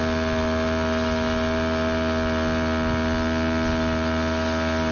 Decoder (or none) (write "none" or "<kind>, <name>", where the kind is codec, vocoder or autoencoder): none